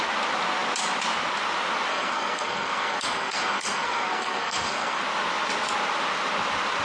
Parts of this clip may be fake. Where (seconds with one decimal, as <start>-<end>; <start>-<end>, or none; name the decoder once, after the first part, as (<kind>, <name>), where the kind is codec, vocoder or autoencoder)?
1.9-5.0 (codec, SNAC)